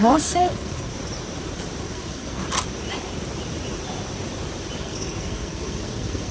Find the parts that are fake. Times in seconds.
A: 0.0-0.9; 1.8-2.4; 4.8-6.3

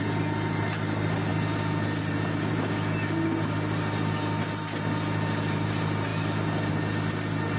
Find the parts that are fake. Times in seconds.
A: none

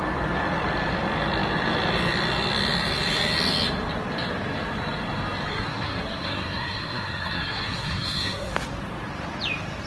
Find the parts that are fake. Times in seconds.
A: 5.5-8.5

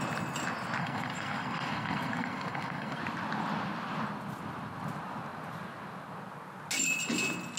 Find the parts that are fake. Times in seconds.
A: 0.8-3.0

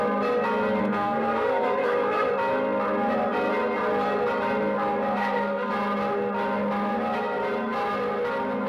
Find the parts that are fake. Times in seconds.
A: 0.8-2.3; 5.2-5.7

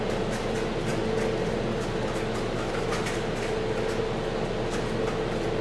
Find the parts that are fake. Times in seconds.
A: none